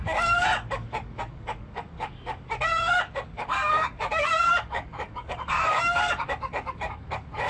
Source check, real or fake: fake